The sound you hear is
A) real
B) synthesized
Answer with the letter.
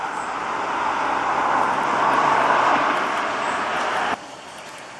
A